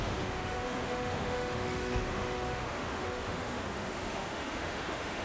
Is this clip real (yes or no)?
no